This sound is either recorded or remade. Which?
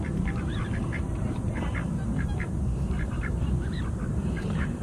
remade